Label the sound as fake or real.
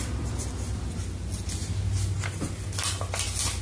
real